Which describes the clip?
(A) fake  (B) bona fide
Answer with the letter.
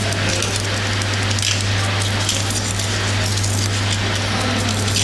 B